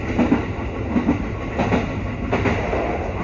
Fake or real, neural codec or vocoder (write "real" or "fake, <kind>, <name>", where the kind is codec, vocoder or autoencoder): real